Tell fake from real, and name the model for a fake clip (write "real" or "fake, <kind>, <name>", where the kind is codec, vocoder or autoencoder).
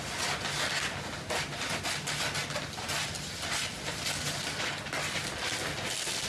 real